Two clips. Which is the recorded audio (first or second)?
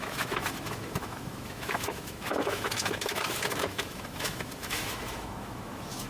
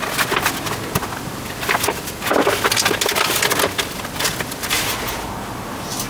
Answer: second